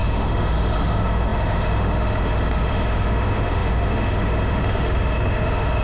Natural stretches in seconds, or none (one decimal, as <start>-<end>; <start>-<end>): none

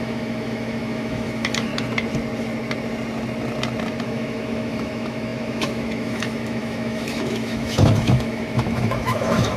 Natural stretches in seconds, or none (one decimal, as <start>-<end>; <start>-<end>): 1.7-4.0

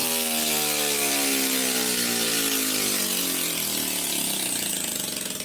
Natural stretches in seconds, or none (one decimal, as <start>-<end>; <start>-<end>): 0.0-5.4

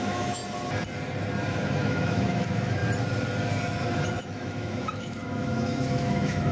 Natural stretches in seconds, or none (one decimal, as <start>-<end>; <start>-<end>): 0.4-1.5; 2.8-4.2